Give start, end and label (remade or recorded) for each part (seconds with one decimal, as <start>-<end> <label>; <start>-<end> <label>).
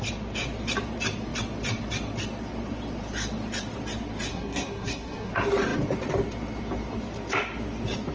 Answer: 0.0-4.3 recorded; 4.3-5.3 remade; 5.3-8.1 recorded